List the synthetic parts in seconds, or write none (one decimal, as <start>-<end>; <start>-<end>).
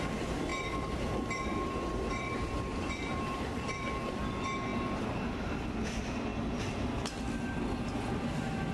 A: 0.5-4.0